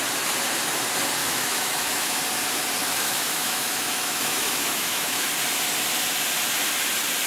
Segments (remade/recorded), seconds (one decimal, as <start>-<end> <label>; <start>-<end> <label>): 0.0-1.2 recorded; 1.2-2.2 remade; 2.2-2.8 recorded; 2.8-5.3 remade; 5.3-7.3 recorded

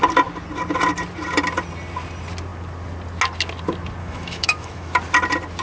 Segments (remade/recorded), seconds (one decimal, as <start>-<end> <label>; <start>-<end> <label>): 0.0-4.0 recorded; 4.0-4.9 remade; 4.9-5.6 recorded

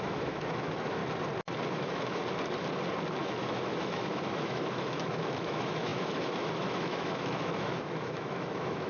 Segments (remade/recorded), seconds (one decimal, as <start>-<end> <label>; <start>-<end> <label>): 0.0-1.0 remade; 1.0-1.7 recorded; 1.7-2.2 remade; 2.2-3.2 recorded; 3.2-8.9 remade

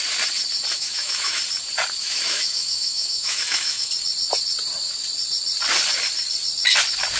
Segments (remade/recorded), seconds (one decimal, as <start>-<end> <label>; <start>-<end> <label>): 0.0-0.7 recorded; 0.7-1.4 remade; 1.4-2.0 recorded; 2.0-3.9 remade; 3.9-7.2 recorded

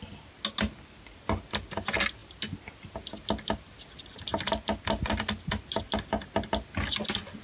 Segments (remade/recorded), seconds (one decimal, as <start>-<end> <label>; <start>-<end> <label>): 0.0-7.4 recorded

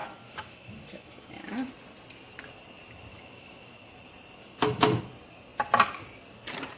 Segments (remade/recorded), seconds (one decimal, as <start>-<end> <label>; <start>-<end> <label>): 0.0-1.7 remade; 1.7-3.1 recorded; 3.1-3.9 remade; 3.9-4.4 recorded; 4.4-5.0 remade; 5.0-6.8 recorded